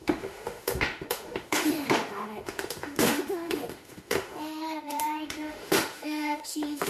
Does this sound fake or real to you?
fake